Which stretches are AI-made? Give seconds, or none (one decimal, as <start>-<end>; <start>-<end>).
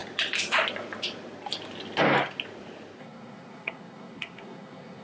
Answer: 3.0-5.0